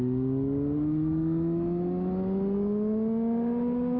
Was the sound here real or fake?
real